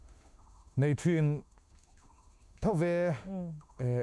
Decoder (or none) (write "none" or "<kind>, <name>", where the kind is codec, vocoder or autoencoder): autoencoder, DAC-VAE